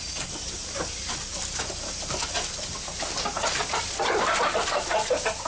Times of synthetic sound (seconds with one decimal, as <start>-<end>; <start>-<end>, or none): none